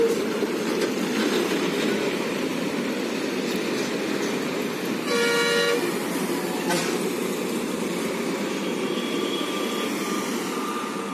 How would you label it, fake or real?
real